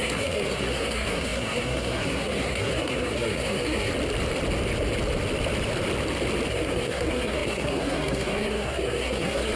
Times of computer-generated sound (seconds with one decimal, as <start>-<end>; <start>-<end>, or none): 0.0-3.9; 6.5-9.6